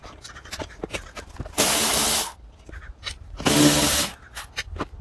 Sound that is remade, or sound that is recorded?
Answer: recorded